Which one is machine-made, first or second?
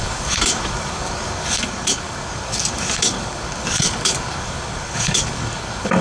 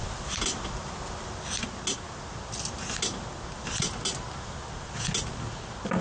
first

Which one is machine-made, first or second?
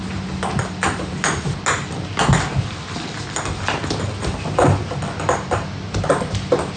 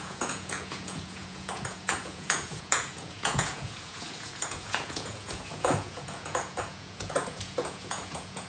second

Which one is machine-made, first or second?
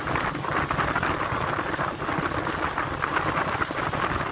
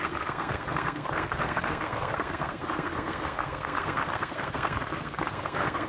second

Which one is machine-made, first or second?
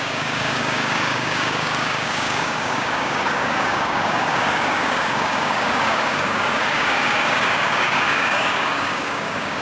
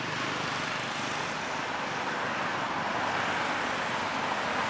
first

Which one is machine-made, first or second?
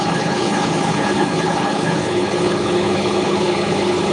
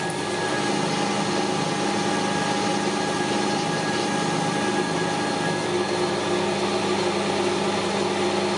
first